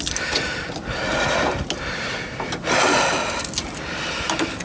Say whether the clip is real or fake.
real